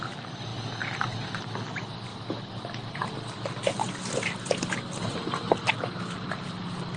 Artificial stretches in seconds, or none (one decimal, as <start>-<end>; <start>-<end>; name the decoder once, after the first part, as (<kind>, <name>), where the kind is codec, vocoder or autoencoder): none